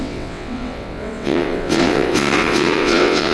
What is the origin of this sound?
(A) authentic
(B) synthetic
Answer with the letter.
B